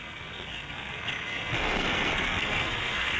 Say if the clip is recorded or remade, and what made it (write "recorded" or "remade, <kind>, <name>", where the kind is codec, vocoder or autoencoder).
remade, codec, SNAC